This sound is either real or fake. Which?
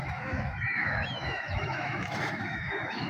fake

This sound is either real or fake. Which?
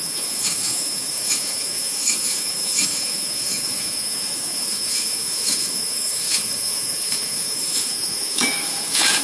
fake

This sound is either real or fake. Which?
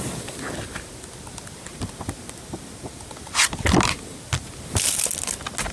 real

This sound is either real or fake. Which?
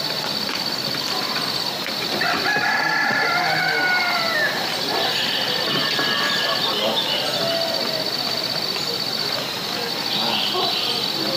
real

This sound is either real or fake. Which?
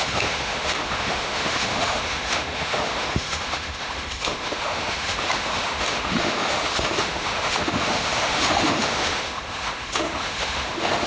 fake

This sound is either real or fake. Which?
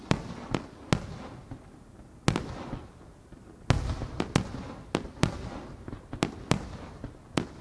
real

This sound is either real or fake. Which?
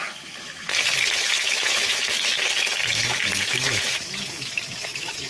fake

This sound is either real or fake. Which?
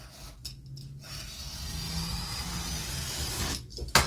real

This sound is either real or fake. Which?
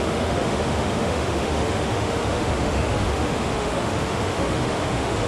fake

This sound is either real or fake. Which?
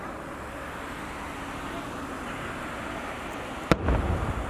real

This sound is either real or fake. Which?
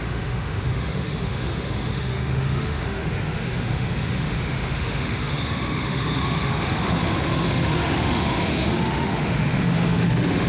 fake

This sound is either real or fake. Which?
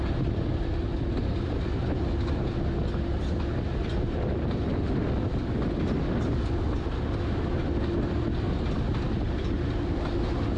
real